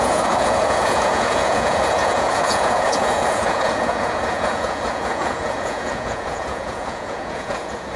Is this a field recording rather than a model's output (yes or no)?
no